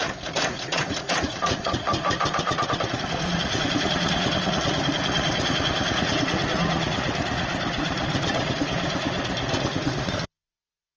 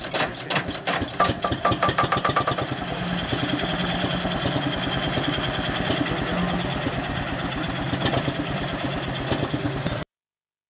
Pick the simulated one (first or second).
first